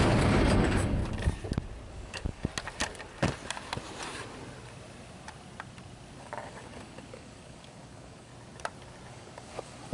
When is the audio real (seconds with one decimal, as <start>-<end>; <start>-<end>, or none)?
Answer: 1.0-1.9; 2.5-6.2; 8.3-9.1